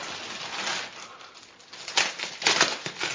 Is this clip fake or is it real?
real